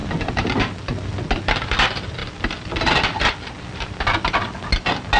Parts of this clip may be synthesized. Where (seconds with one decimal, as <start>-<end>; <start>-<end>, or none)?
none